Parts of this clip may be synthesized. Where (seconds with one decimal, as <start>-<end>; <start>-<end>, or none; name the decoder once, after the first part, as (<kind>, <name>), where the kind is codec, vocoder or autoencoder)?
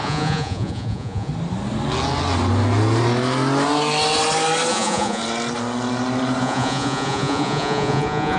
0.0-1.3 (vocoder, Vocos); 4.7-5.2; 6.4-8.4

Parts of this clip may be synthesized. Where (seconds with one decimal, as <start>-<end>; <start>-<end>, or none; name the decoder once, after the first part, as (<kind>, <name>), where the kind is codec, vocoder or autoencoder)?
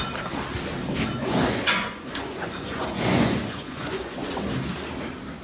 1.2-4.4 (vocoder, Vocos)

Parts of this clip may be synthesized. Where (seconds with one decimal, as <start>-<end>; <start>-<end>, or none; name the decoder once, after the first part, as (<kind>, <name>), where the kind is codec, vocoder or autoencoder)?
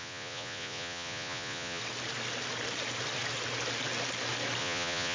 0.0-1.8 (vocoder, Vocos); 4.6-5.1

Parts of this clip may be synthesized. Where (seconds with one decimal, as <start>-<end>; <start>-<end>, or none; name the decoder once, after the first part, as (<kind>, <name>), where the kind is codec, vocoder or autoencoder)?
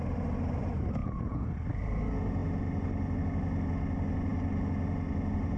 1.0-1.5 (vocoder, Vocos)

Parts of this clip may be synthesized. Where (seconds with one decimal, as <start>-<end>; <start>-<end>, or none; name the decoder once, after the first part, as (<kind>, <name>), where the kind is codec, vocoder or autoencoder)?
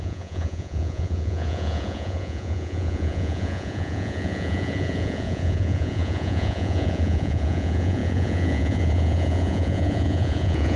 0.0-10.8 (vocoder, Vocos)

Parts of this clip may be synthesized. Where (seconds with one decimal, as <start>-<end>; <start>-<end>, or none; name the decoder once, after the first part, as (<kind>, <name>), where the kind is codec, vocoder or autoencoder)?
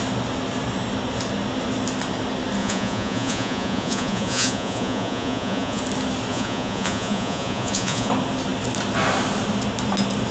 2.6-5.8 (vocoder, Vocos); 6.3-8.1